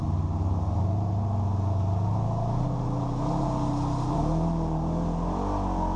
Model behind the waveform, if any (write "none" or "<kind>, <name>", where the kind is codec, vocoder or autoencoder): none